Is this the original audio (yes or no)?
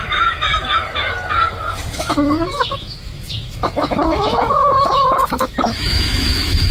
no